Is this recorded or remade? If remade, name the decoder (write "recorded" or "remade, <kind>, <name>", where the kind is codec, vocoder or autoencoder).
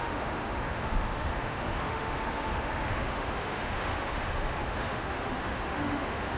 remade, autoencoder, DAC-VAE